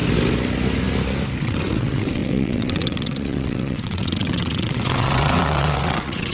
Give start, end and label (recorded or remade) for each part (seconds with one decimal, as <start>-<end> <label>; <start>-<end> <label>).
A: 0.0-1.4 recorded; 1.4-6.3 remade